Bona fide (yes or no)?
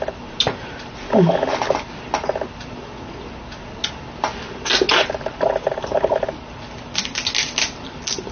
yes